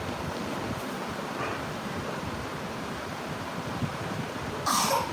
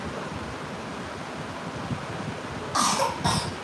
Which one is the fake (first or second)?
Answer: first